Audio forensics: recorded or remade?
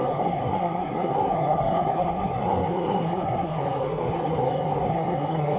remade